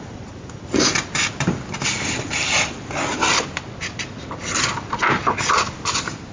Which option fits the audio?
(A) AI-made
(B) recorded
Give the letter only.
B